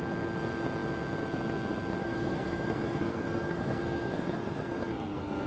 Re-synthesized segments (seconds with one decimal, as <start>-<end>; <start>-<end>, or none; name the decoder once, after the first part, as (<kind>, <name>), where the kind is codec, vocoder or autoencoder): 2.0-5.5 (codec, SNAC)